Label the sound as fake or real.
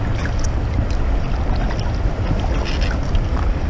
real